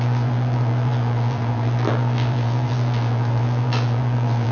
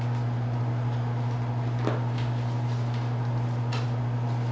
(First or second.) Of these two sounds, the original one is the second